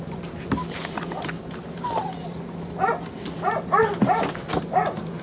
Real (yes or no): yes